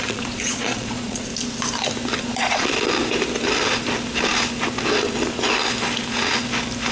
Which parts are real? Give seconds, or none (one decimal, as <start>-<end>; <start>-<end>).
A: 1.3-2.2; 2.7-6.9